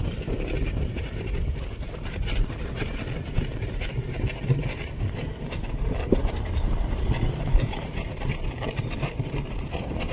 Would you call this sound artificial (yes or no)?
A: yes